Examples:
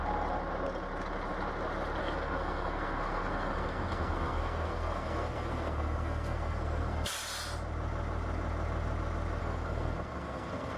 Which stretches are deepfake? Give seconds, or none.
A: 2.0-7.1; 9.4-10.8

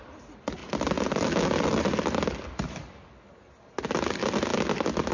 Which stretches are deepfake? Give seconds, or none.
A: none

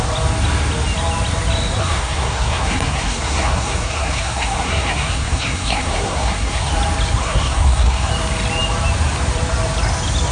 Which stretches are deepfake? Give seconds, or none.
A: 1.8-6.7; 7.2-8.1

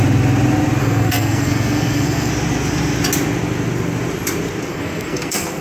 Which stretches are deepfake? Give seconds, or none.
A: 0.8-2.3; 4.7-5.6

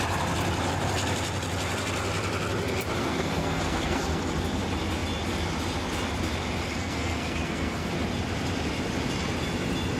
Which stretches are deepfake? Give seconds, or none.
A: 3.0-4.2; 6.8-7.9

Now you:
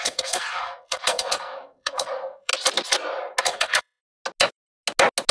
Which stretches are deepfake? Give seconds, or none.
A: 0.0-2.5; 3.4-4.0

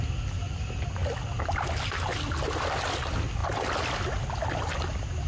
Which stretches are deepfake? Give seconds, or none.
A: none